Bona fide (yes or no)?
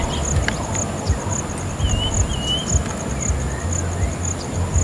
yes